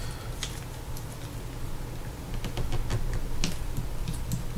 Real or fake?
real